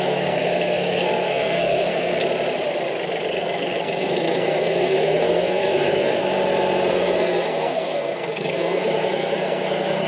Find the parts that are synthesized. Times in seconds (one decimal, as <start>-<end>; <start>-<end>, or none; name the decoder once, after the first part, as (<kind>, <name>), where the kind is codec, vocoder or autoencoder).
0.0-2.2 (codec, SNAC); 3.3-6.3; 6.9-10.1